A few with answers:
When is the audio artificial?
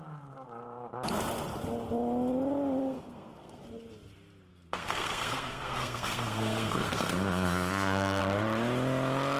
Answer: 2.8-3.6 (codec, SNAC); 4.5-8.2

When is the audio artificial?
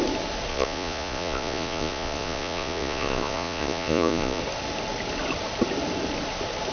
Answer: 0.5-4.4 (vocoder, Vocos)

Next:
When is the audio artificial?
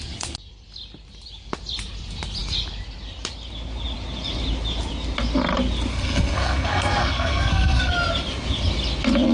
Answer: 5.9-7.9 (codec, SNAC)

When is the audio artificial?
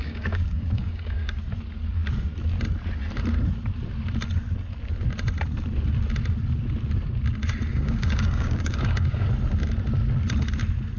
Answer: 0.0-1.4 (codec, DAC); 7.7-9.3